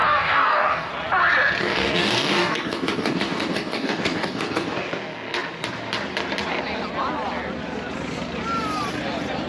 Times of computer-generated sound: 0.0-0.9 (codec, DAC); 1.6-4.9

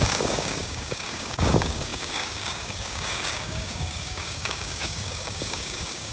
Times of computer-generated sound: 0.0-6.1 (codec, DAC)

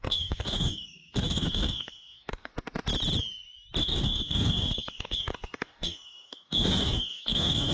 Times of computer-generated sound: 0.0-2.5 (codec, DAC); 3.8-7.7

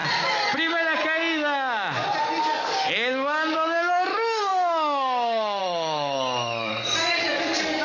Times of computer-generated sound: 2.4-7.8 (codec, DAC)

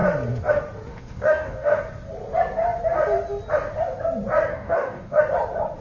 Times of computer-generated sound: 0.9-1.8 (codec, DAC); 4.5-5.2

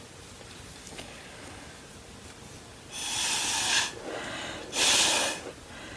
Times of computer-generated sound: 0.8-1.8 (codec, DAC)

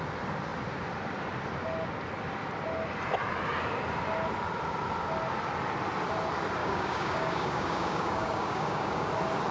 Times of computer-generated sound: 6.6-9.1 (codec, DAC)